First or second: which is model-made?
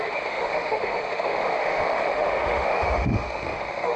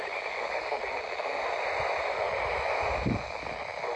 first